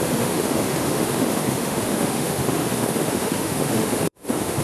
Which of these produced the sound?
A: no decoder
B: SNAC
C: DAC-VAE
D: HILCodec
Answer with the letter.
C